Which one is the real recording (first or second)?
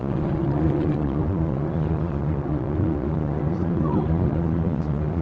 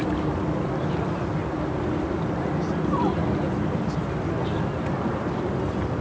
second